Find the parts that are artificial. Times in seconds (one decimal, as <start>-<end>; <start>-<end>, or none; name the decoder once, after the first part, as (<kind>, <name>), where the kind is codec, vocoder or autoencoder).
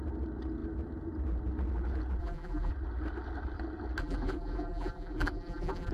2.2-2.7 (vocoder, BigVGAN v2); 4.0-5.9